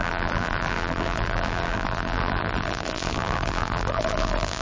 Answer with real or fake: fake